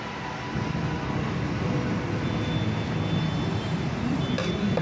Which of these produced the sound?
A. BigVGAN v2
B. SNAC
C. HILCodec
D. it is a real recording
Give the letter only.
D